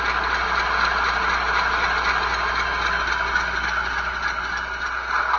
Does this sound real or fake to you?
real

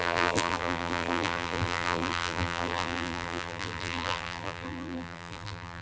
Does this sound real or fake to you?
fake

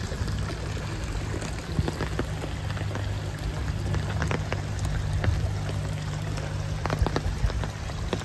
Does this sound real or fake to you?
real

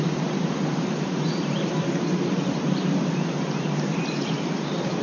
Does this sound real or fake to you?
fake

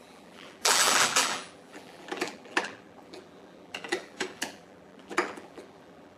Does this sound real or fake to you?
fake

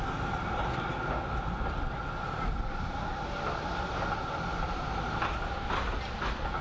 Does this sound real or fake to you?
real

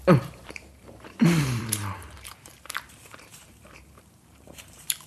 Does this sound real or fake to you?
fake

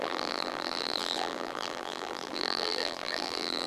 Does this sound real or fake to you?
fake